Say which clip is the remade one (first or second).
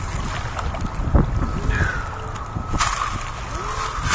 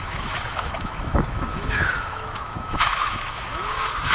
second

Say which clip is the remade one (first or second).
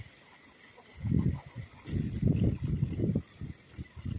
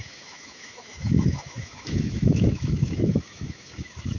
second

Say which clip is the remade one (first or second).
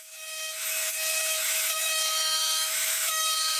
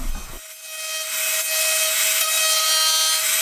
first